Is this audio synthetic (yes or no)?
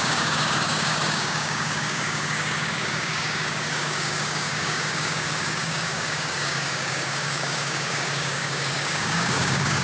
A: yes